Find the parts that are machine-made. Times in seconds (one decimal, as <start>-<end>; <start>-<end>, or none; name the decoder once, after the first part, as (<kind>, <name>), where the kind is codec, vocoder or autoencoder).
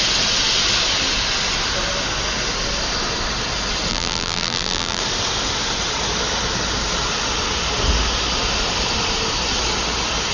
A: 3.9-5.0 (vocoder, BigVGAN v2)